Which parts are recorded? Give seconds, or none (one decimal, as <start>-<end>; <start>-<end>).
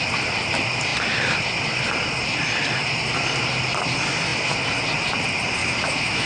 0.0-5.6